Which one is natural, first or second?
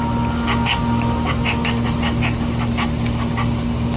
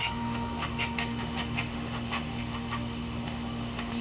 first